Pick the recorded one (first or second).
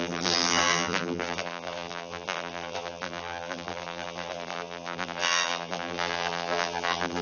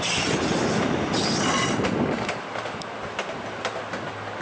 second